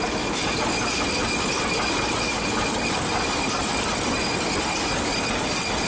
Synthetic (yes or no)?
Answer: no